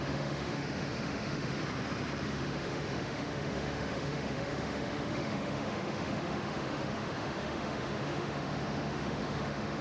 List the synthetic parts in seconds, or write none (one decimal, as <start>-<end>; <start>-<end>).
0.0-1.6; 2.2-9.8